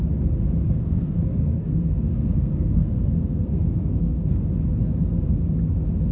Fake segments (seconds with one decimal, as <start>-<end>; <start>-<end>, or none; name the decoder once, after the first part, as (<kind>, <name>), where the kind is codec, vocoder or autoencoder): 0.6-4.3 (codec, SNAC)